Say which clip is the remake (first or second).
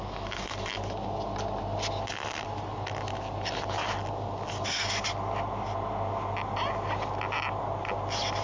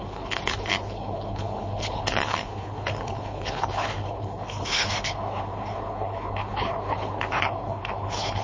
second